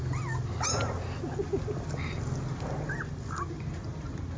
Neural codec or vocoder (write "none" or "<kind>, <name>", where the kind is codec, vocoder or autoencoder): none